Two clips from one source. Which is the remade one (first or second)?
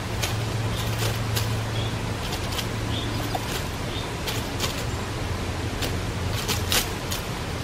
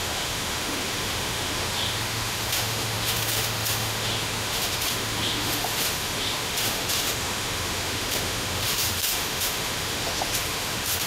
second